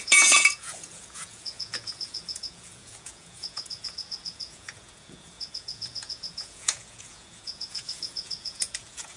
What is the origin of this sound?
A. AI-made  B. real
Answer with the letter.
A